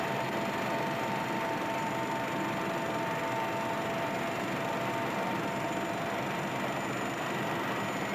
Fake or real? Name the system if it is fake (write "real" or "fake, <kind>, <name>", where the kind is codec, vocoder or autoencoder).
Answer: real